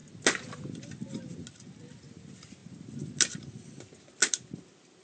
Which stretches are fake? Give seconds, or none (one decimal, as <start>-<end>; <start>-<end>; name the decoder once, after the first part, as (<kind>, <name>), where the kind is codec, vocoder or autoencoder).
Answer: none